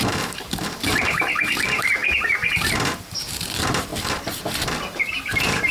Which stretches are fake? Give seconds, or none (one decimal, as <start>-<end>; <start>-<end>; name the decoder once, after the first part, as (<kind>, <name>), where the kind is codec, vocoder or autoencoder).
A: 0.0-3.9 (vocoder, BigVGAN v2); 5.2-5.7